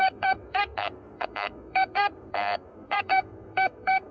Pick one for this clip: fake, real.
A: fake